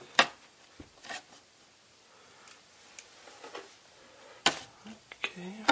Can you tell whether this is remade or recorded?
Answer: recorded